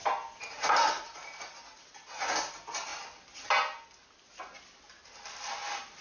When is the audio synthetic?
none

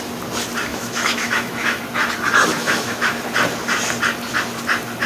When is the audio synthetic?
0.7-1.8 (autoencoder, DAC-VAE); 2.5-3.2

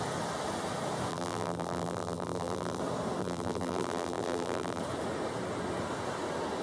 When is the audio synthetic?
1.1-2.8 (vocoder, BigVGAN v2); 3.2-4.8